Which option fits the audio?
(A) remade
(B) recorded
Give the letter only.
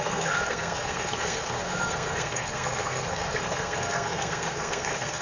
A